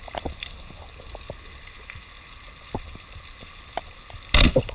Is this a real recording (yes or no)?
yes